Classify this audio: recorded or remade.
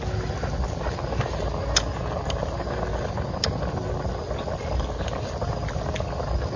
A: recorded